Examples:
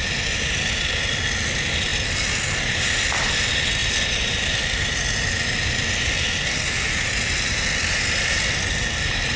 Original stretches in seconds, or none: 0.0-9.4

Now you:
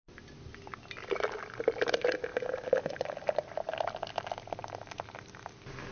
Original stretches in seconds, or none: 0.0-5.9

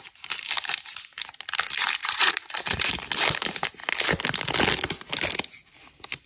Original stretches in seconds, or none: 0.0-2.0; 2.9-6.3

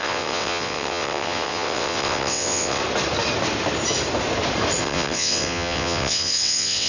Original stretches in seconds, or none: 2.8-4.8